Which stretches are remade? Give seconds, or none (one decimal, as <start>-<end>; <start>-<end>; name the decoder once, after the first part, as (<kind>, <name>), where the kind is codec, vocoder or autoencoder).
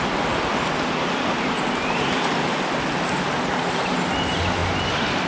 none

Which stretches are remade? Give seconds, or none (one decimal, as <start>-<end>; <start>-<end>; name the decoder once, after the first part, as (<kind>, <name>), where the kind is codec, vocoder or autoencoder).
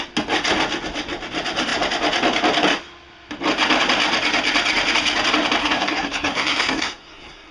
5.6-7.5 (codec, SNAC)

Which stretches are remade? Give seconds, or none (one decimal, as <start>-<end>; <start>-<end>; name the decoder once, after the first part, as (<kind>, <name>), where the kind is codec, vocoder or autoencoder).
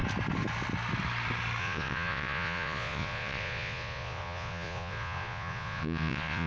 1.6-6.5 (vocoder, Vocos)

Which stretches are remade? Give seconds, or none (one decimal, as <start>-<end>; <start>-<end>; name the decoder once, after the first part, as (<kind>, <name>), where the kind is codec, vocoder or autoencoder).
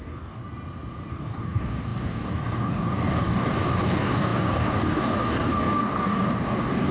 0.0-0.4 (codec, DAC); 1.1-6.9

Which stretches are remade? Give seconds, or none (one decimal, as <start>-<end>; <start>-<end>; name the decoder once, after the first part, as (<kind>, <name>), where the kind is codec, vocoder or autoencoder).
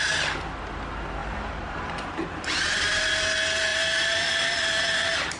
1.2-3.1 (vocoder, BigVGAN v2); 3.7-5.4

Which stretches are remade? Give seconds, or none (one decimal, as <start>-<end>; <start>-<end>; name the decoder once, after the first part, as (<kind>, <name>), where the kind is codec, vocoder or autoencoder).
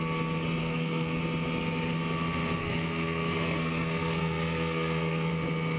0.6-1.2 (codec, SNAC); 2.6-5.3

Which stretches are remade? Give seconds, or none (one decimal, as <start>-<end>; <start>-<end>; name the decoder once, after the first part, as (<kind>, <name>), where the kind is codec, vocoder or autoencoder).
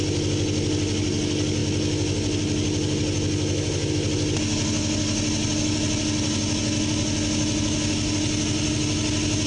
none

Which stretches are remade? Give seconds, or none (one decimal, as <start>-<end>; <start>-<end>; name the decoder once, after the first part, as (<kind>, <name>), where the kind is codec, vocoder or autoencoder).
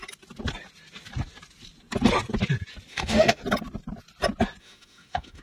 2.9-3.4 (autoencoder, DAC-VAE); 4.6-5.4